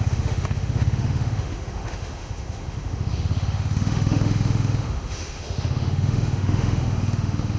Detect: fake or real fake